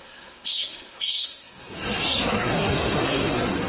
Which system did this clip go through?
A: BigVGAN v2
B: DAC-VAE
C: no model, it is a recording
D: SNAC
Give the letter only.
D